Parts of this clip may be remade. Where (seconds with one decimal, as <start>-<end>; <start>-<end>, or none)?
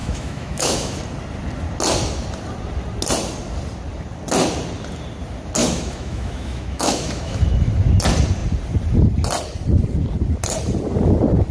0.0-1.0; 5.6-7.4